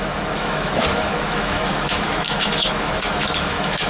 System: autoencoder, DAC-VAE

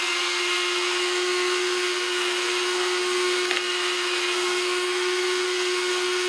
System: codec, SNAC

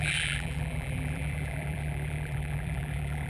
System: vocoder, BigVGAN v2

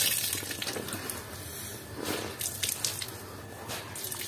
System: none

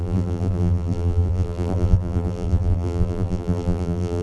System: vocoder, BigVGAN v2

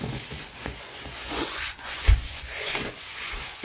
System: vocoder, Vocos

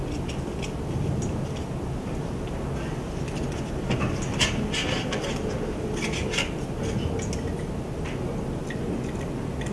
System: none